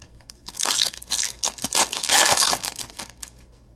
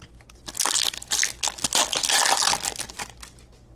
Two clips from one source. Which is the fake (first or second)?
first